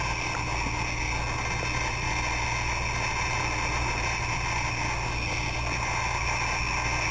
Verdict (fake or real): real